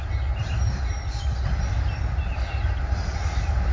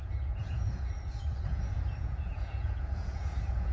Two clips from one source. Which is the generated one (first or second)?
second